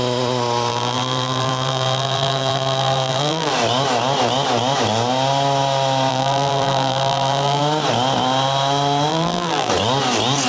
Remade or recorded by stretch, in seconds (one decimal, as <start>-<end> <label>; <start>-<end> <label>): 0.0-0.7 recorded; 0.7-3.5 remade; 3.5-6.1 recorded; 6.1-7.6 remade; 7.6-9.1 recorded; 9.1-9.7 remade; 9.7-10.5 recorded